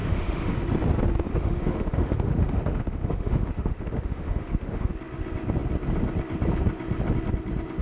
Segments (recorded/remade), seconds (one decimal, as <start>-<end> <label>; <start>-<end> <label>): 0.0-0.6 remade; 0.6-1.3 recorded; 1.3-4.9 remade; 4.9-7.8 recorded